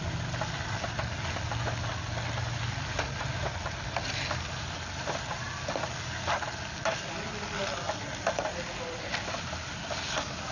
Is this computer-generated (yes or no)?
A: no